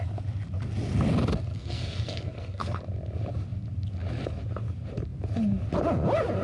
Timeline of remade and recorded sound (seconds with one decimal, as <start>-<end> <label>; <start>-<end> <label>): 0.0-1.5 recorded; 1.5-2.8 remade; 2.8-6.4 recorded